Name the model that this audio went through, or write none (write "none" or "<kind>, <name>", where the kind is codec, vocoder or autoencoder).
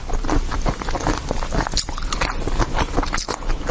none